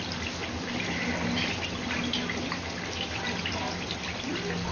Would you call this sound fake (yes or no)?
no